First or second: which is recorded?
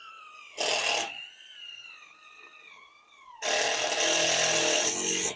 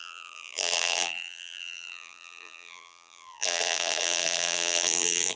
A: first